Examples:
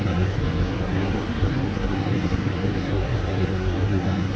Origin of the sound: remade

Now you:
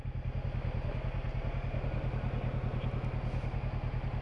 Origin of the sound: recorded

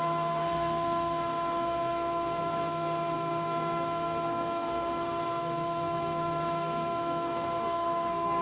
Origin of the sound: remade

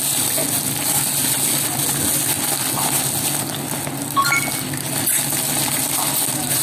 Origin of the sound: recorded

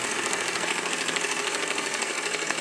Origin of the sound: remade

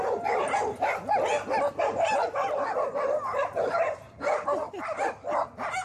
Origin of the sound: recorded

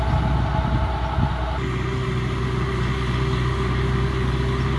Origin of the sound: recorded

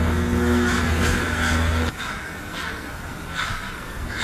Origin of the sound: remade